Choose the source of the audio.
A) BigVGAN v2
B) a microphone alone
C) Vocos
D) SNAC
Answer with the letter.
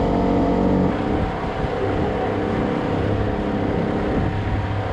B